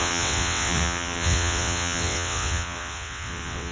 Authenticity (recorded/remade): remade